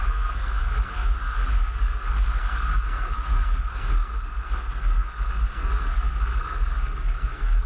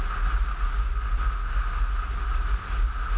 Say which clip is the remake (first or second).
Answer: first